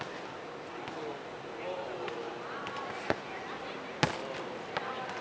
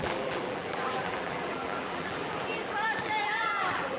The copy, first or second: second